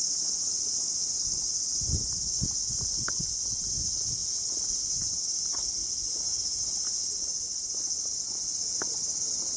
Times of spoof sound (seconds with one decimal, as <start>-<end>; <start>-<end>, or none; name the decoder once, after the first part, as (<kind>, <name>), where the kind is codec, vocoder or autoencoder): none